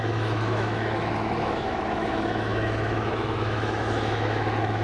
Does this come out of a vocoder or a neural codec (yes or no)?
yes